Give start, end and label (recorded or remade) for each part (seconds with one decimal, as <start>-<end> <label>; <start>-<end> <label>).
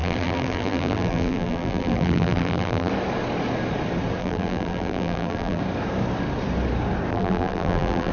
0.0-2.9 remade; 2.9-4.2 recorded; 4.2-5.6 remade; 5.6-7.1 recorded; 7.1-8.1 remade